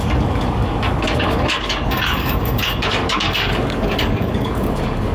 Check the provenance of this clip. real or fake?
fake